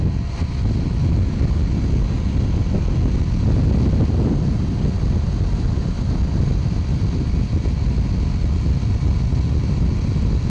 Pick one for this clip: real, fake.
real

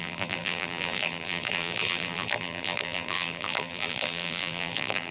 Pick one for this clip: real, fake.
fake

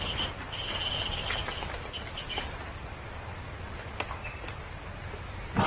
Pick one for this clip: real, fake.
real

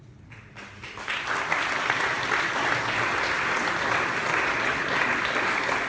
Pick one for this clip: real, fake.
real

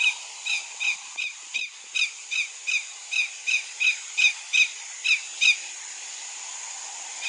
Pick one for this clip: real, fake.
real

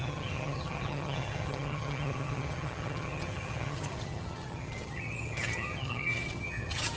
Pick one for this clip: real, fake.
fake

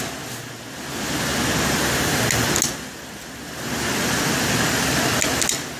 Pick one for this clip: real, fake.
real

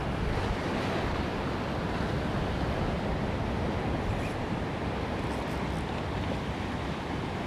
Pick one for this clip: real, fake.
real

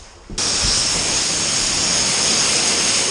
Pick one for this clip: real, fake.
real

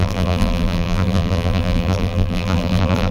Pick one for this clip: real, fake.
fake